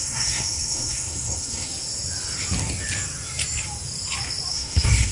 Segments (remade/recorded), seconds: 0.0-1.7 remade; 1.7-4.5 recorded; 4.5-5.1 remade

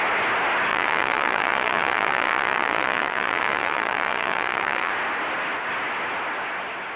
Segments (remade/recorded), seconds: 0.0-0.7 recorded; 0.7-4.9 remade; 4.9-7.0 recorded

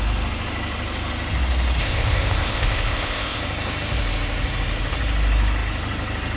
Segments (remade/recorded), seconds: 0.0-1.8 recorded; 1.8-3.4 remade; 3.4-6.4 recorded